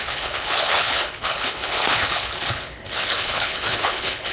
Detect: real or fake fake